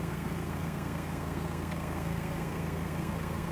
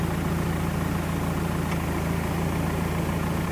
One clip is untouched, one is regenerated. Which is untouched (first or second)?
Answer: second